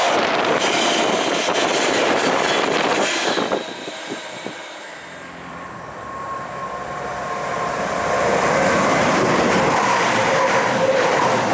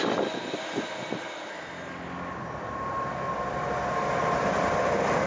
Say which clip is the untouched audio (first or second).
second